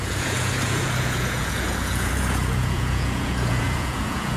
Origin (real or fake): fake